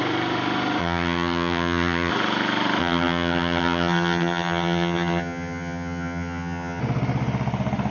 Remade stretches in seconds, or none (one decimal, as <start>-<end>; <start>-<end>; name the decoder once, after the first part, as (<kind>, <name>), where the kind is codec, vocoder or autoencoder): 0.8-2.1 (vocoder, HiFi-GAN); 2.8-6.8